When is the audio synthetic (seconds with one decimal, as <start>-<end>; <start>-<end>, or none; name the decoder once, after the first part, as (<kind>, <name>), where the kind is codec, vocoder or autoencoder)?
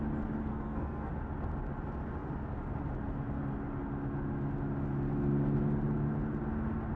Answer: 0.5-1.1 (codec, SNAC)